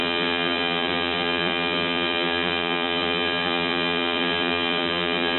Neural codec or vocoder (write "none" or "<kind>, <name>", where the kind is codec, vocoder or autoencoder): vocoder, BigVGAN v2